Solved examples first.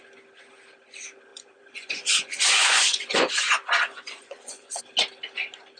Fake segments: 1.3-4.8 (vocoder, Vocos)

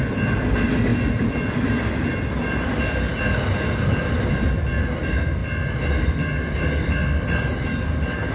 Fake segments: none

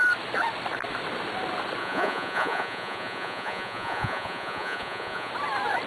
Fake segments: 1.8-5.3 (vocoder, Vocos)

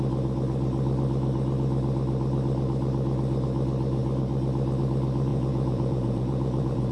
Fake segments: 5.3-6.9 (vocoder, Vocos)

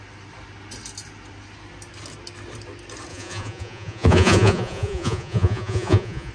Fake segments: 3.1-6.3 (vocoder, Vocos)